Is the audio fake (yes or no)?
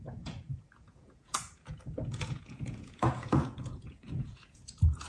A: yes